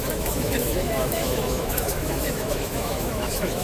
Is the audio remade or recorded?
remade